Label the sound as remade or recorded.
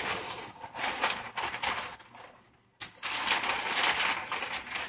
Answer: recorded